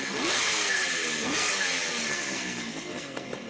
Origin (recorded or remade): remade